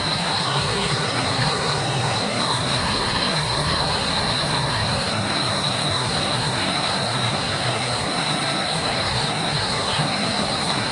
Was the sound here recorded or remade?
remade